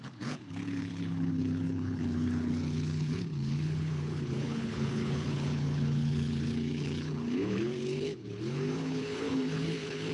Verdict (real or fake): fake